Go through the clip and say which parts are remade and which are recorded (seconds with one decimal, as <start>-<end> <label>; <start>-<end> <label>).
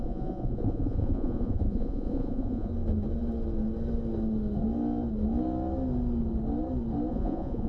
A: 0.0-2.7 remade; 2.7-7.1 recorded; 7.1-7.7 remade